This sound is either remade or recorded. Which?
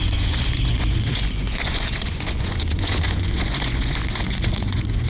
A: remade